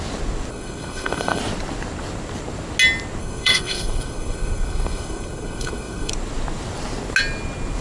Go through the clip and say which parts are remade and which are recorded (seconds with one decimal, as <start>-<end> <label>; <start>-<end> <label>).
0.0-0.5 recorded; 0.5-1.4 remade; 1.4-3.2 recorded; 3.2-6.1 remade; 6.1-7.8 recorded